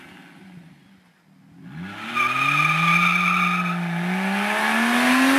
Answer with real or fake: real